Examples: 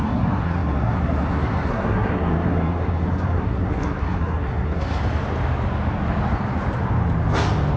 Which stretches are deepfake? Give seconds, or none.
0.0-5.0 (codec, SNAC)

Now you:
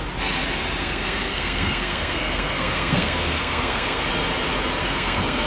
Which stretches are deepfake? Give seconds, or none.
0.8-4.1 (codec, SNAC); 4.8-5.5

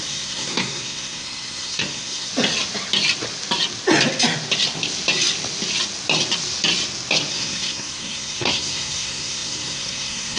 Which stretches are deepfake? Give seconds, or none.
0.0-2.3 (codec, SNAC); 7.3-10.4